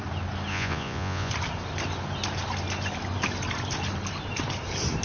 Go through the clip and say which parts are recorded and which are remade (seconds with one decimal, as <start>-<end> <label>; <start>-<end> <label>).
0.0-0.5 recorded; 0.5-1.3 remade; 1.3-5.0 recorded